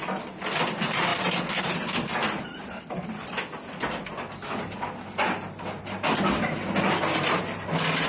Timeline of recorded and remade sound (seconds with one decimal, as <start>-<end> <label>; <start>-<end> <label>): 0.0-8.1 recorded